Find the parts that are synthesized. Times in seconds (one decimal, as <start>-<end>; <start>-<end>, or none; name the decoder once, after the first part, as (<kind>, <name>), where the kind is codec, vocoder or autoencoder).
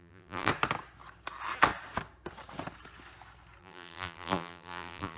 0.0-0.5 (vocoder, BigVGAN v2); 3.6-5.2